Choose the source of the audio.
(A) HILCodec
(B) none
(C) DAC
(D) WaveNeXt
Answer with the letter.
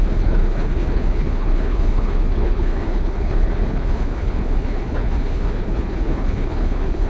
A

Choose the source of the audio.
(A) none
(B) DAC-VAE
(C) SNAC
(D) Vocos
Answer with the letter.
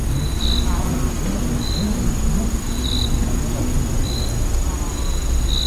A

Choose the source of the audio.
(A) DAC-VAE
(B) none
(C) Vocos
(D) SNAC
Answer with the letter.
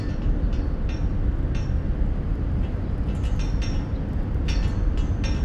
B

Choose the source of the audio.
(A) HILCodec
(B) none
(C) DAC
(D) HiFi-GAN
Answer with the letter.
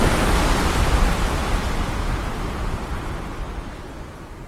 B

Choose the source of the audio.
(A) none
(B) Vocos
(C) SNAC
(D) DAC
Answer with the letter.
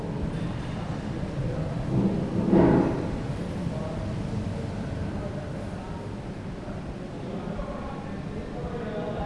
A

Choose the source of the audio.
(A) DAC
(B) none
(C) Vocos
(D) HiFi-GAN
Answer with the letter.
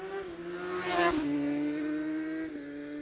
B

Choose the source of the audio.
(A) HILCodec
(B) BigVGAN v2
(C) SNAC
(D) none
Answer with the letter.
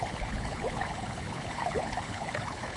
A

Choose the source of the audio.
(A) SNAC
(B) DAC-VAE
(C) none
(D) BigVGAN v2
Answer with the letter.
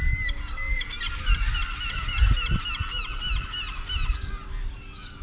C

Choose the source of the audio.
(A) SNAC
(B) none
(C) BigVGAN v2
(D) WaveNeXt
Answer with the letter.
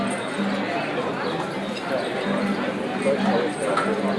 B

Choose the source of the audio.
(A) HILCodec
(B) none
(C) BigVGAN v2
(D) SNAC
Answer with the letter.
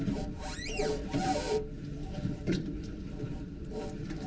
C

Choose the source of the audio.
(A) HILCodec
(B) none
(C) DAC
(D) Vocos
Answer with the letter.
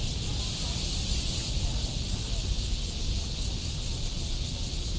B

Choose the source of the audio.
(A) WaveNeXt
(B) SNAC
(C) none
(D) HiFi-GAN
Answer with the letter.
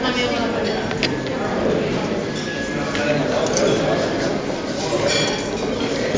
C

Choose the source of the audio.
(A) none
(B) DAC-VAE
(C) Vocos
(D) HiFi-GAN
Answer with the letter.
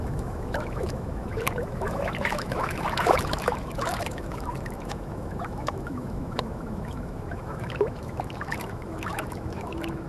B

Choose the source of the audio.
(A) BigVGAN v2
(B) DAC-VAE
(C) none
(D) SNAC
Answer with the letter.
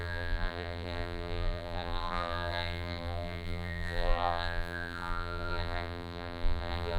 A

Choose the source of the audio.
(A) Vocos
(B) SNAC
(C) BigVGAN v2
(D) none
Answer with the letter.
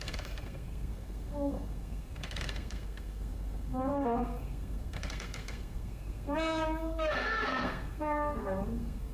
B